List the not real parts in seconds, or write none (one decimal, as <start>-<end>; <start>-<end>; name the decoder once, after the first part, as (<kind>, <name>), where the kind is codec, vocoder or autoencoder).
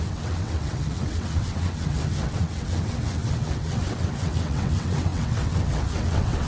0.0-6.5 (vocoder, WaveNeXt)